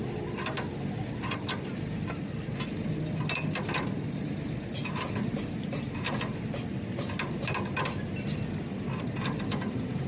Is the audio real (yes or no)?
yes